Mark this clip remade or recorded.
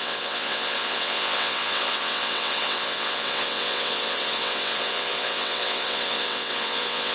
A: remade